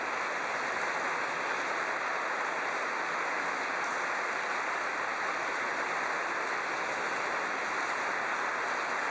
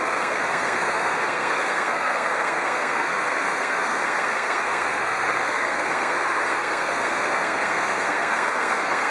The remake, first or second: second